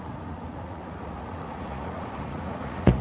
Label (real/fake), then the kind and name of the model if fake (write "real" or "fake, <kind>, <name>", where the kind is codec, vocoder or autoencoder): fake, vocoder, Vocos